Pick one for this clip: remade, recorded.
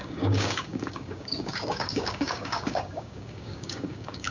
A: remade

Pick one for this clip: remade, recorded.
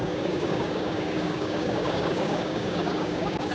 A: remade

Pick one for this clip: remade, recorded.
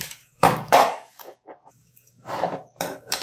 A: remade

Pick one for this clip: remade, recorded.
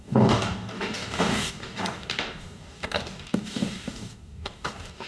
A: remade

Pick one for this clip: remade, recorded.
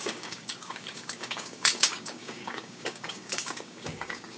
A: remade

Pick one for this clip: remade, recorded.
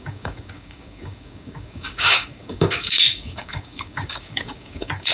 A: remade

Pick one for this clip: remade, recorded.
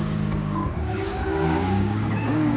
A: remade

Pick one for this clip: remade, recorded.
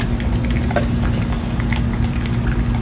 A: recorded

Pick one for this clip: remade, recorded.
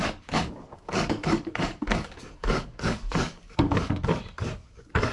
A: remade